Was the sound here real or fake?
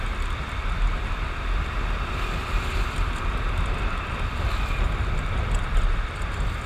fake